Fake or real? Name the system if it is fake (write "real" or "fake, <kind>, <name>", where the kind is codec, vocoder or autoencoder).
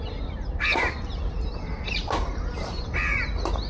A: real